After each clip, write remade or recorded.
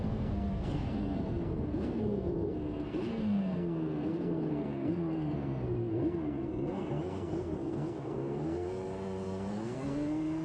remade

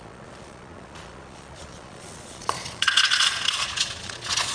remade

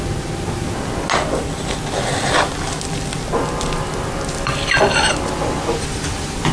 recorded